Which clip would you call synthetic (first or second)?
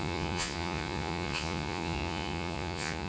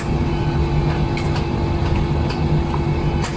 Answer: first